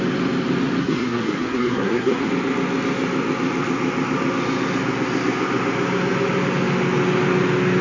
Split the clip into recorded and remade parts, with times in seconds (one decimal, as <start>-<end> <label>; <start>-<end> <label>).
0.0-0.8 recorded; 0.8-2.3 remade; 2.3-7.8 recorded